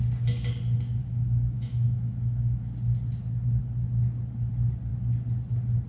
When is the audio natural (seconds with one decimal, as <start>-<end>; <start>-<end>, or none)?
0.0-1.0; 2.6-5.9